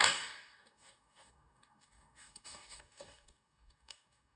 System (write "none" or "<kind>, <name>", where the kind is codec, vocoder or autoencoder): codec, DAC